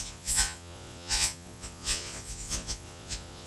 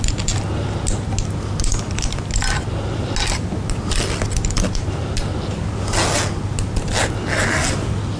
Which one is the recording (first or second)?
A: second